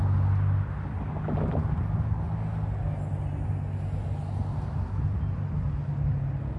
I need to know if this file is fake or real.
real